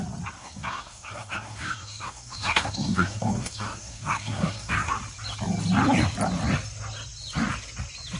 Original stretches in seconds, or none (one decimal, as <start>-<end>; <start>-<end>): 0.0-0.4; 4.9-8.2

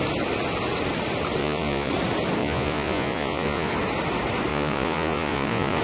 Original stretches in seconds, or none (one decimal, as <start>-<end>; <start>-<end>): 0.0-1.4; 1.9-2.4; 3.7-4.5

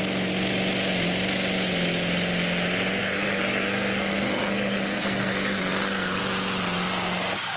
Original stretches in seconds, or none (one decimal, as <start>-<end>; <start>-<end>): 0.0-3.0; 6.2-7.6